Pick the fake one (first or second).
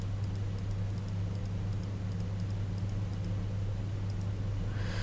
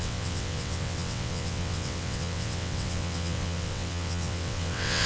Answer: second